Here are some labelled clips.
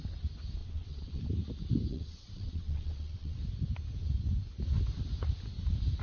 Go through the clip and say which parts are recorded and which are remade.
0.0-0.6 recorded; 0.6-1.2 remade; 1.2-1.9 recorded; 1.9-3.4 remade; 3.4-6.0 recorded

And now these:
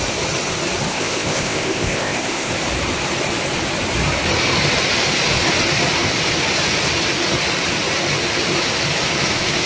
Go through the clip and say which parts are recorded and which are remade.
0.0-0.9 recorded; 0.9-2.5 remade; 2.5-9.7 recorded

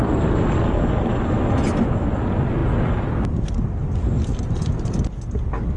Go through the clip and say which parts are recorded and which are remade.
0.0-5.8 recorded